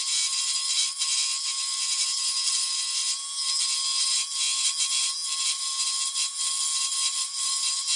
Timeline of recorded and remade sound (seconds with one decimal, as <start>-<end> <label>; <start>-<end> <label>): 0.0-6.9 recorded; 6.9-7.5 remade; 7.5-8.0 recorded